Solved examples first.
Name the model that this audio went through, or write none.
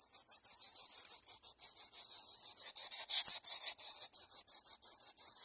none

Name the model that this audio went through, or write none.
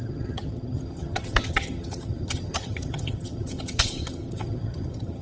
vocoder, HiFi-GAN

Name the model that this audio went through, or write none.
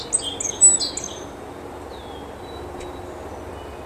none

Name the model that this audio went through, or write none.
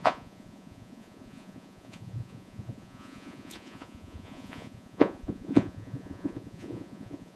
vocoder, Vocos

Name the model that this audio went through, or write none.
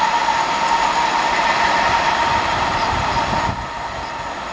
none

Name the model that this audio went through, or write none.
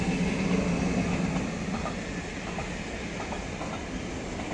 none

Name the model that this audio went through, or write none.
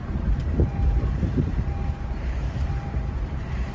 vocoder, BigVGAN v2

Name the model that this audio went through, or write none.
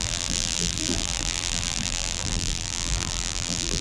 vocoder, BigVGAN v2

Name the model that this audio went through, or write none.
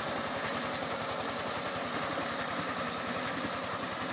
none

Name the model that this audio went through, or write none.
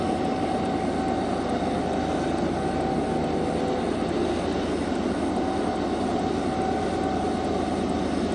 none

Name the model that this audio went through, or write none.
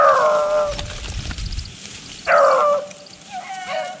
none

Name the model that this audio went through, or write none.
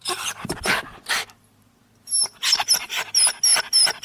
none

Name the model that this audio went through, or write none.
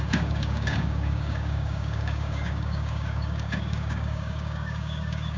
codec, DAC